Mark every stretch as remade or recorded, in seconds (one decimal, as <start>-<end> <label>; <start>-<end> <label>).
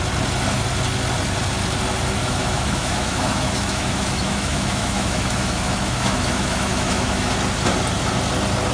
0.0-2.2 recorded; 2.2-7.3 remade; 7.3-8.7 recorded